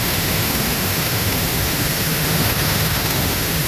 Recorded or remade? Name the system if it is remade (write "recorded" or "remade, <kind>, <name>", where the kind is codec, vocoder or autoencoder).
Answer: remade, autoencoder, DAC-VAE